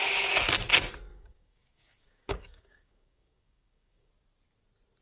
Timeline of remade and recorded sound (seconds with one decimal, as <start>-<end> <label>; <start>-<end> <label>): 0.0-1.1 recorded; 1.1-4.1 remade; 4.1-5.0 recorded